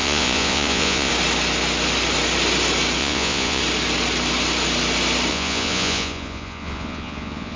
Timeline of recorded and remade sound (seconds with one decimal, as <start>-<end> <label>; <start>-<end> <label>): 0.0-1.1 remade; 1.1-3.0 recorded; 3.0-3.6 remade; 3.6-5.3 recorded; 5.3-7.6 remade